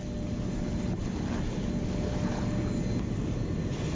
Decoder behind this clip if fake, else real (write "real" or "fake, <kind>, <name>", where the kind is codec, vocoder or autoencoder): real